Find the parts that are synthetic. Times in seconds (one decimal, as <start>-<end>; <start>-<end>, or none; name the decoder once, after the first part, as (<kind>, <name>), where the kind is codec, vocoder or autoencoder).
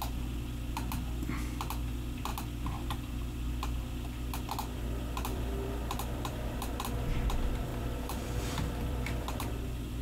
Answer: 5.3-6.5 (vocoder, BigVGAN v2); 7.7-9.5